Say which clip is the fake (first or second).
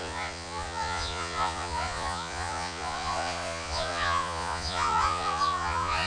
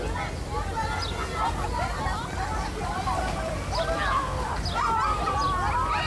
first